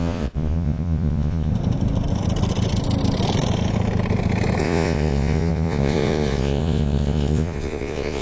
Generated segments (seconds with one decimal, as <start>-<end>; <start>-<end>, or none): 0.0-1.5; 4.6-8.2